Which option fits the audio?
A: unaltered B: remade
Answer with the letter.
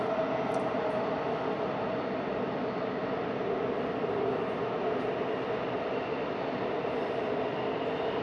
A